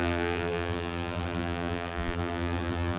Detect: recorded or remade remade